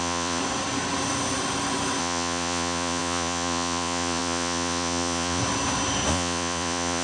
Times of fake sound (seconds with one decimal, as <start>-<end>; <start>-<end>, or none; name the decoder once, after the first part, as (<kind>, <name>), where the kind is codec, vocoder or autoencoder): 0.0-0.4 (vocoder, Vocos); 2.0-5.4; 6.1-7.0